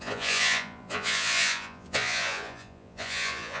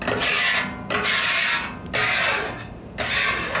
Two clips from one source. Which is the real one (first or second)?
second